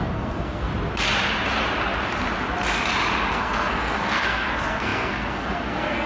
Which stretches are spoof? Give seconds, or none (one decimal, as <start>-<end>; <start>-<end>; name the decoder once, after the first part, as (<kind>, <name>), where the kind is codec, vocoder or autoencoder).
0.0-0.7 (codec, SNAC); 3.3-6.1